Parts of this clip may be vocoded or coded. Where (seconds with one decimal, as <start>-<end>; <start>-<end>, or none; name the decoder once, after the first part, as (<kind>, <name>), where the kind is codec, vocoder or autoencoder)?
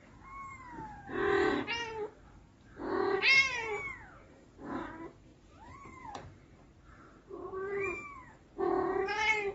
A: 0.5-1.1 (vocoder, BigVGAN v2); 5.3-8.6